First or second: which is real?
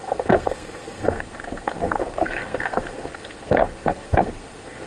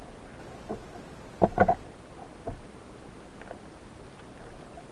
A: second